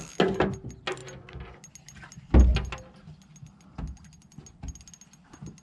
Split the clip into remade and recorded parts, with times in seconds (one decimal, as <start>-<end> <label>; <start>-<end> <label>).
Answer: 0.0-5.6 recorded